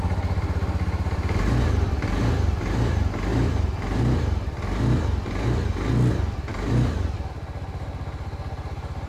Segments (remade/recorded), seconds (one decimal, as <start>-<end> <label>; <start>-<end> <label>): 0.0-9.1 recorded